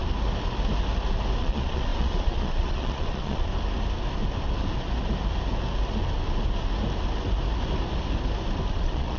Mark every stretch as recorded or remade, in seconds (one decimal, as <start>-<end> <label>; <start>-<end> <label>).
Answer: 0.0-1.4 recorded; 1.4-3.5 remade; 3.5-8.7 recorded; 8.7-9.2 remade